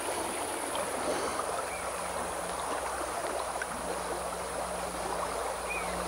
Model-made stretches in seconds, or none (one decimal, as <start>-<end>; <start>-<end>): none

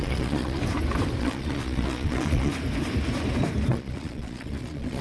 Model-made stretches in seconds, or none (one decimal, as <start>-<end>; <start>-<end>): 0.0-0.6; 1.2-2.5; 3.7-5.0

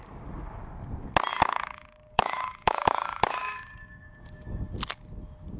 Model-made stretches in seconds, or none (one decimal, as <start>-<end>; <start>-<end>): 1.3-4.7

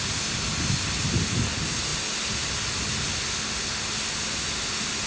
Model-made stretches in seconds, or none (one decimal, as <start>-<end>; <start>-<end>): none

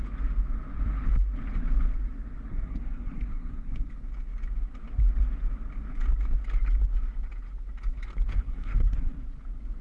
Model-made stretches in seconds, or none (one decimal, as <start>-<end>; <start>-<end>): 2.5-3.9; 8.3-9.2

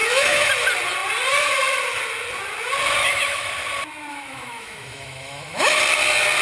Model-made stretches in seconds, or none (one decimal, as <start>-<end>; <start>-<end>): 0.0-0.5; 3.0-3.5; 4.1-5.8